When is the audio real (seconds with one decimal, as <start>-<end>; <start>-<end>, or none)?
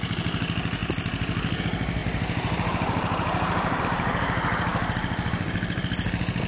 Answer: 0.0-2.0; 3.8-6.5